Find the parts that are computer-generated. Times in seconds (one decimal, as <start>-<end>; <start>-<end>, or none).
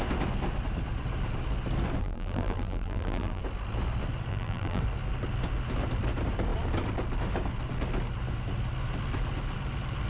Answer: 2.0-3.4; 4.3-4.8